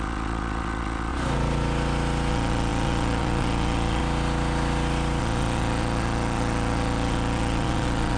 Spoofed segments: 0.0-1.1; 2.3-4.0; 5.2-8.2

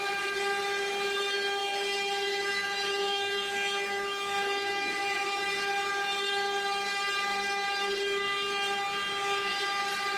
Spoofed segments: 1.6-5.5

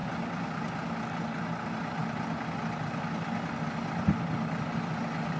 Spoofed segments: none